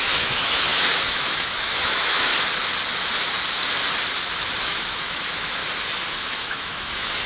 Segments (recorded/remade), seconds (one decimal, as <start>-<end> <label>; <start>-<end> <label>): 0.0-2.3 remade; 2.3-4.6 recorded; 4.6-5.6 remade; 5.6-6.1 recorded; 6.1-7.3 remade